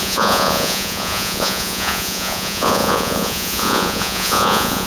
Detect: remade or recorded remade